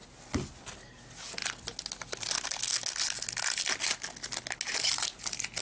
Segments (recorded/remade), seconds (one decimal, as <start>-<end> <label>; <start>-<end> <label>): 0.0-5.6 recorded